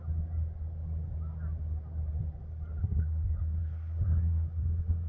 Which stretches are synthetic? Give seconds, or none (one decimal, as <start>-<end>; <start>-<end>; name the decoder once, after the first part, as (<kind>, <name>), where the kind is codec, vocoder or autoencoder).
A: 2.8-5.1 (codec, SNAC)